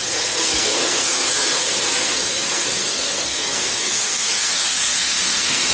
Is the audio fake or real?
fake